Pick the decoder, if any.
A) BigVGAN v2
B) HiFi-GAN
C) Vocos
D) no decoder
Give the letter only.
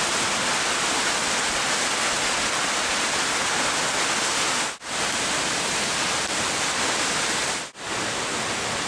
D